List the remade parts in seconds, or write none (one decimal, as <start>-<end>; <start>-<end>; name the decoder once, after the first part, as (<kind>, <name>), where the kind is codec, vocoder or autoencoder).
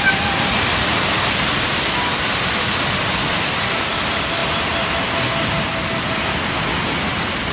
none